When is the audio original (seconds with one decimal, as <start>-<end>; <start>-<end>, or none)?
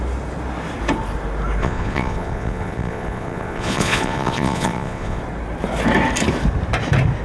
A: 0.0-1.6; 5.2-7.2